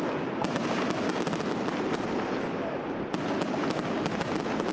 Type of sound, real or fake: real